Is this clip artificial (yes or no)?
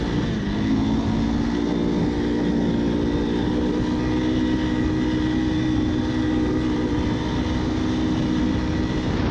no